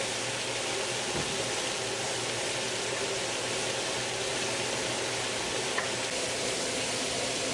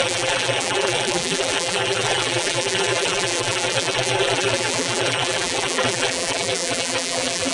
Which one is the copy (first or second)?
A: second